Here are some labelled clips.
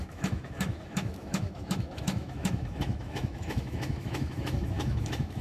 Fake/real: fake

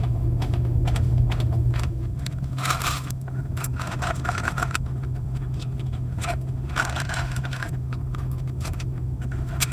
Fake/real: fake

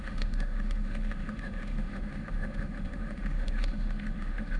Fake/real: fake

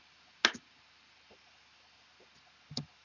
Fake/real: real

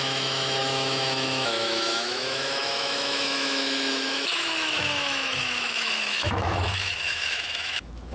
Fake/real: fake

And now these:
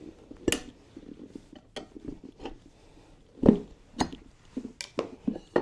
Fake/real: real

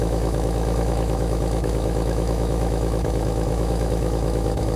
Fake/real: fake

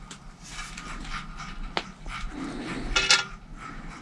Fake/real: real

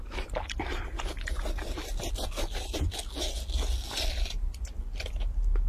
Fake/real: real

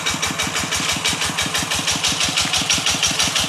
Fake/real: real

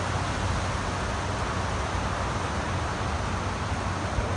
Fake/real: real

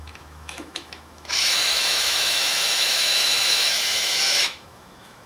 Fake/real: fake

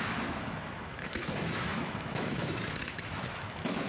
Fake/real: fake